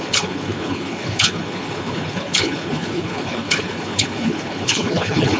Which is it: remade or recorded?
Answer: remade